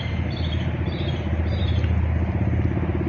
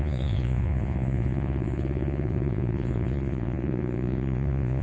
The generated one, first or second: second